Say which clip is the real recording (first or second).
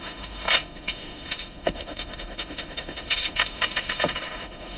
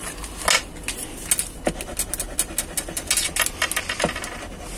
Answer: second